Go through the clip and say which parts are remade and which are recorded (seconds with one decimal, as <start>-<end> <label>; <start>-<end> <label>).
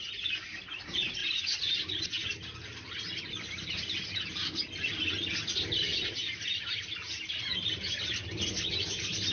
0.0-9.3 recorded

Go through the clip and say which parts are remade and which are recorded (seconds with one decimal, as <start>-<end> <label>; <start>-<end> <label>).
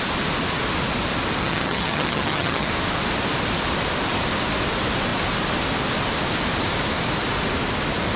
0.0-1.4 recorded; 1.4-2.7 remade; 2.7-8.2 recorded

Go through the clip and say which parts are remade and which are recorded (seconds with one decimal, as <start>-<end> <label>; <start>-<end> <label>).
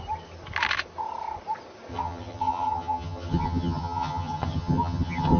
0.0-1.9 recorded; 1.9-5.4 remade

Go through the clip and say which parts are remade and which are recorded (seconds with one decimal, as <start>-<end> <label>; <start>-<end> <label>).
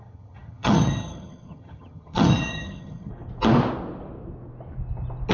0.0-3.1 remade; 3.1-5.3 recorded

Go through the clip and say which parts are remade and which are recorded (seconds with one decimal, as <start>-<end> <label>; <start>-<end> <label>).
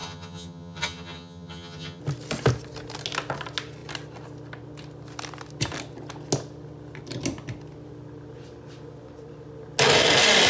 0.0-2.0 remade; 2.0-10.5 recorded